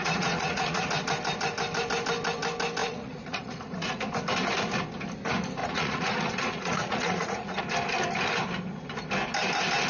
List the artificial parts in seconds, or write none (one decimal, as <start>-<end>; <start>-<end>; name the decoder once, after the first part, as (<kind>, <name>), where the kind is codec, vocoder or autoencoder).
0.0-0.8 (vocoder, Vocos); 2.8-4.0; 5.6-7.6